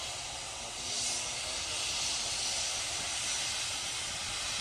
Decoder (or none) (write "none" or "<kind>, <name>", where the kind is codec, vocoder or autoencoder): none